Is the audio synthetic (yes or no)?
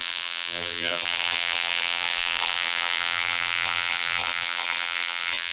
yes